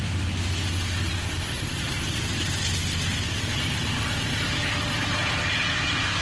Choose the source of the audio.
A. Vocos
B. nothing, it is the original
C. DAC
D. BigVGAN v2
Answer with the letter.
B